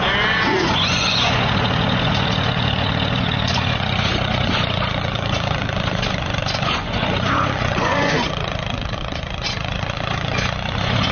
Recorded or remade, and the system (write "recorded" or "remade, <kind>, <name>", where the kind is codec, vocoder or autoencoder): remade, vocoder, Vocos